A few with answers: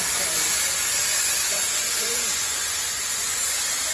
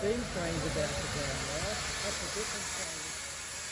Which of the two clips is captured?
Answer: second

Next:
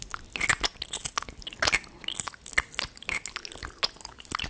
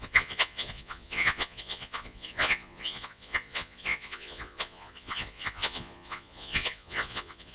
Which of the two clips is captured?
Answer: first